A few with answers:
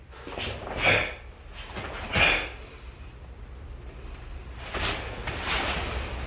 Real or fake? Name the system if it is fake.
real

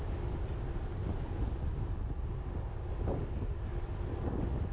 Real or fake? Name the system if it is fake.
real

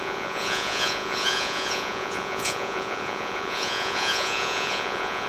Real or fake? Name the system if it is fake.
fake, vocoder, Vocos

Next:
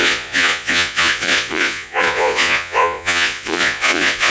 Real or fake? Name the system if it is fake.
fake, vocoder, Vocos